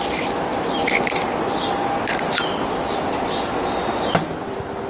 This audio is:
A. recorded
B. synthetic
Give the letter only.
A